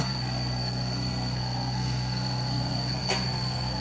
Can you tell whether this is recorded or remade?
remade